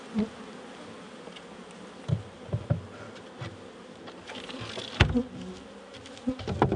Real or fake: real